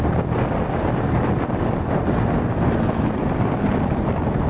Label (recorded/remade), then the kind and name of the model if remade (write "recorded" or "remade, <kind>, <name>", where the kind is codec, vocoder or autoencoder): recorded